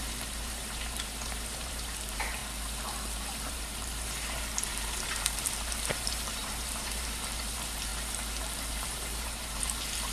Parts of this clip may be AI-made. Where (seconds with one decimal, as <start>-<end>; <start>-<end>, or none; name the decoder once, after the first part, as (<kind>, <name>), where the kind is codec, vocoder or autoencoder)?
0.0-2.4 (vocoder, BigVGAN v2); 3.5-7.9; 8.7-10.1